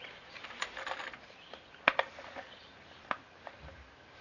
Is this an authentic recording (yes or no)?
yes